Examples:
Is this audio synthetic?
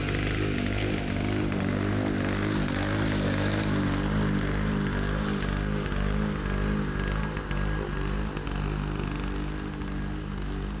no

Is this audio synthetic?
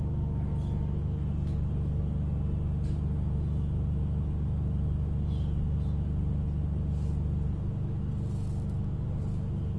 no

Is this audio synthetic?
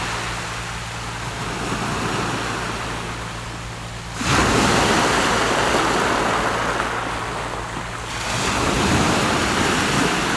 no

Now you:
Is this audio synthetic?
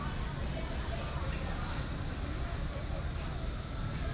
no